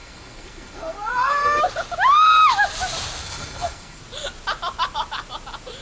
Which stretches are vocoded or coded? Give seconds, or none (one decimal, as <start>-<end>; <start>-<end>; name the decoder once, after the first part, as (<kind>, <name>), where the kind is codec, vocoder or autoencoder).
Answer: 0.0-1.6 (codec, SNAC); 3.2-4.0